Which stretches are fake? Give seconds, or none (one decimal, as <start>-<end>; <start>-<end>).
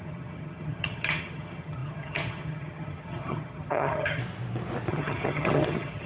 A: 0.0-4.2; 4.9-6.1